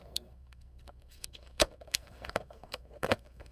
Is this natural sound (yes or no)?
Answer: no